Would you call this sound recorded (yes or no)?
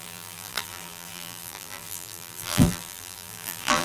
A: no